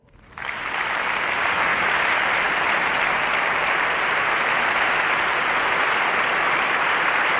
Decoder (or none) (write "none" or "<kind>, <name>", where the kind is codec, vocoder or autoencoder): none